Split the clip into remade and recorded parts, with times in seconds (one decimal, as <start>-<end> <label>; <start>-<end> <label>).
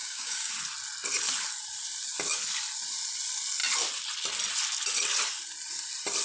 0.0-0.5 remade; 0.5-6.2 recorded